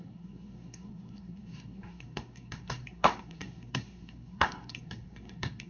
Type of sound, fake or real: fake